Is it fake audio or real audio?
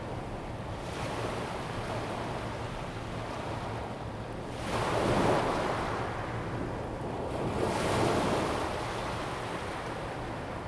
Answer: real